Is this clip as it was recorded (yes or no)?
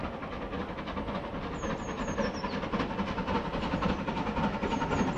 yes